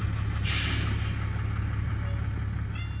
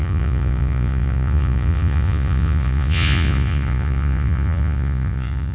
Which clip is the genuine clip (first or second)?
first